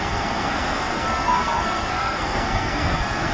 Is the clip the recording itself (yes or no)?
no